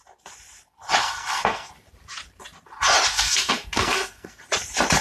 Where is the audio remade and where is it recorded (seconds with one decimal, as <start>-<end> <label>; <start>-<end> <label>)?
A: 0.0-1.0 recorded; 1.0-1.7 remade; 1.7-3.1 recorded; 3.1-4.4 remade; 4.4-5.0 recorded